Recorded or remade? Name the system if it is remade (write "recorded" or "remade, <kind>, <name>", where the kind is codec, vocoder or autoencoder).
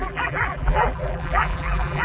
remade, vocoder, BigVGAN v2